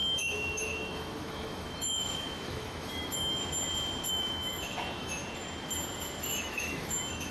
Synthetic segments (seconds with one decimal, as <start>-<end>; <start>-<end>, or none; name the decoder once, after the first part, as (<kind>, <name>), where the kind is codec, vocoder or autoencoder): 0.0-3.4 (autoencoder, DAC-VAE); 4.1-5.2; 6.2-7.3